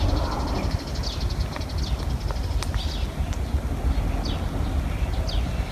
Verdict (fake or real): real